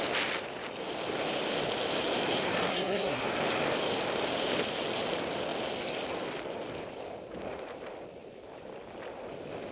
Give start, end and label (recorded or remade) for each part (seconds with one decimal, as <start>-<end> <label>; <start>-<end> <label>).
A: 0.0-2.7 recorded; 2.7-3.2 remade; 3.2-9.7 recorded